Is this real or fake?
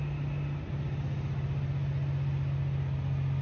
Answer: real